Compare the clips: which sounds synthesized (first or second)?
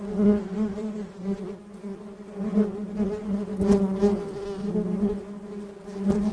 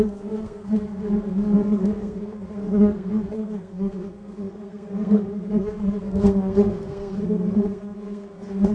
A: second